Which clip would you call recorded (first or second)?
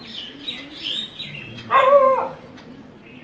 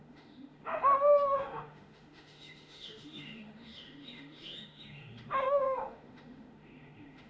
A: first